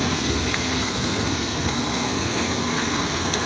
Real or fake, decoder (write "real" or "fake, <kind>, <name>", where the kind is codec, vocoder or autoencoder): fake, codec, SNAC